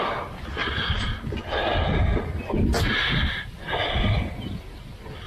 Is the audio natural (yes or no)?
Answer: yes